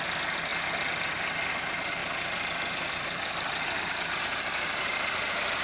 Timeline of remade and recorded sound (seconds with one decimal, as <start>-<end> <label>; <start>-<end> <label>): 0.0-0.5 remade; 0.5-1.5 recorded; 1.5-5.6 remade